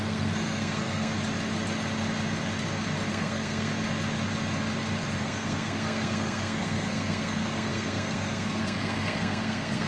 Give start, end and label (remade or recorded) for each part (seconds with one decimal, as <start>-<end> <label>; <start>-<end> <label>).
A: 0.0-1.1 remade; 1.1-3.1 recorded; 3.1-3.7 remade; 3.7-5.2 recorded; 5.2-9.9 remade